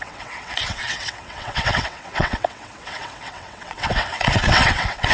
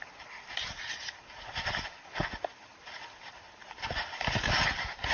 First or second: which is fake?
first